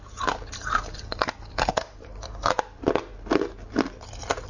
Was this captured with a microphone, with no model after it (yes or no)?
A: yes